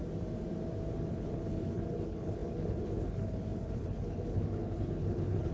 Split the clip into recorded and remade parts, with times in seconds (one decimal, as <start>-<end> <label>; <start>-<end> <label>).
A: 0.0-1.1 recorded; 1.1-5.5 remade